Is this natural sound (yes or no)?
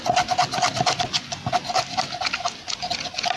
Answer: yes